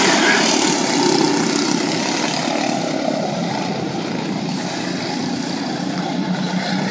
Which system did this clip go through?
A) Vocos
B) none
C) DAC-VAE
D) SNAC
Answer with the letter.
B